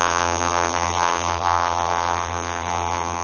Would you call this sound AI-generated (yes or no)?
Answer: yes